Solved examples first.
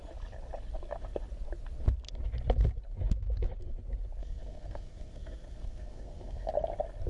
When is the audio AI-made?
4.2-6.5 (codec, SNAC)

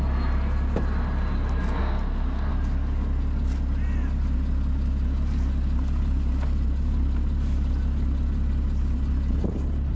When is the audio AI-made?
1.8-2.5 (codec, SNAC)

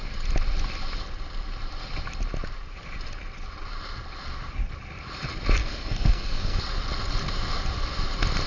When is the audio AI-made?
5.6-6.6 (codec, SNAC)

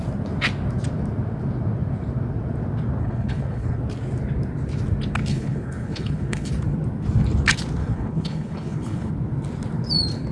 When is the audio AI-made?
3.0-3.8 (codec, HILCodec); 5.3-6.5; 7.8-9.1

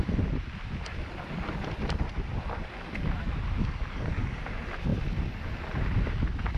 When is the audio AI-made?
3.6-4.4 (codec, DAC)